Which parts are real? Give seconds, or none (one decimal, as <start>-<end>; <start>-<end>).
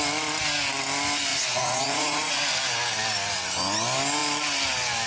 0.0-1.3; 2.4-5.1